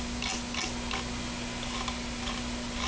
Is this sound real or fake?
real